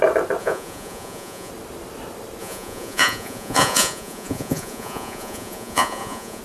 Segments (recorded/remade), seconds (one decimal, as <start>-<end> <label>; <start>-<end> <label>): 0.0-0.4 recorded; 0.4-1.5 remade; 1.5-2.4 recorded; 2.4-6.4 remade